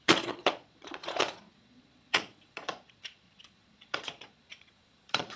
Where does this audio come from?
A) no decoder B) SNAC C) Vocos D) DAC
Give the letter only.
C